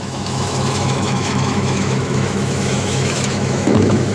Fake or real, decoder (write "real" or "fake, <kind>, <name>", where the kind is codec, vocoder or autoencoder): fake, autoencoder, DAC-VAE